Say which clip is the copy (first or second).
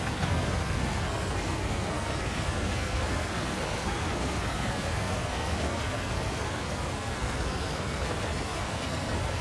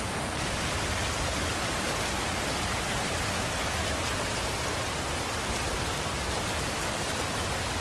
first